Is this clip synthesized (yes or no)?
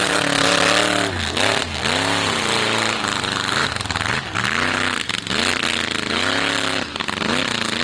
no